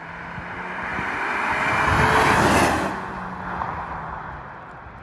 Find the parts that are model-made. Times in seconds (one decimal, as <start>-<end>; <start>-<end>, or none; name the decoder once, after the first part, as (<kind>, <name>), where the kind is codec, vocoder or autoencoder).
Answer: 0.9-1.5 (vocoder, BigVGAN v2)